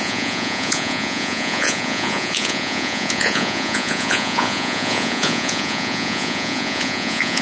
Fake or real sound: fake